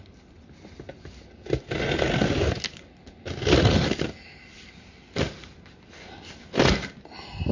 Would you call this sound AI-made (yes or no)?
no